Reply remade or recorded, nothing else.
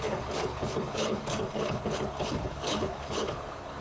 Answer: remade